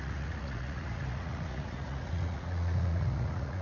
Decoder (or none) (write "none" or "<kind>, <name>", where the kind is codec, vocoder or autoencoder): vocoder, Vocos